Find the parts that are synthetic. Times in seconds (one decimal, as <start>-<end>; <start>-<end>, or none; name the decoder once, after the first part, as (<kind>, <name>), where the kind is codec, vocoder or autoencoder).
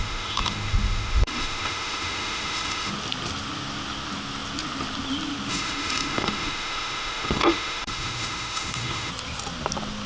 0.0-2.9 (autoencoder, DAC-VAE); 5.5-9.1